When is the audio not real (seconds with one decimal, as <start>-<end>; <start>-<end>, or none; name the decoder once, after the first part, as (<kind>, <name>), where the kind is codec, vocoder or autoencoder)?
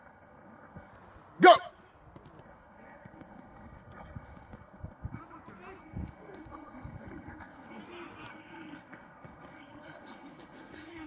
0.0-0.9 (codec, SNAC); 2.4-5.2; 5.8-7.8; 8.3-11.1